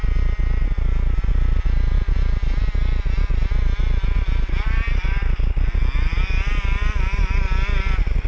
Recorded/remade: recorded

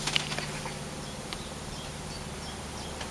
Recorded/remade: recorded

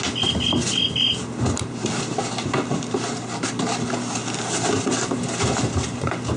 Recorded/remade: recorded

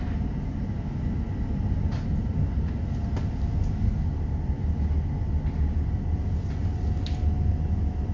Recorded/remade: recorded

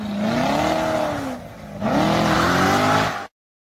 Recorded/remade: recorded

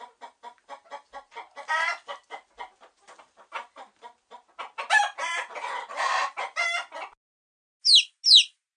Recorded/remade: recorded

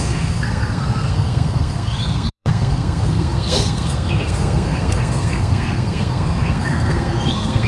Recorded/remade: remade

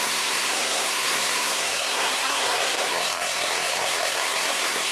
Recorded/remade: remade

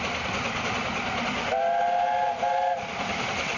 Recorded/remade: recorded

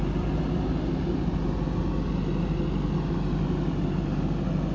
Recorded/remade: recorded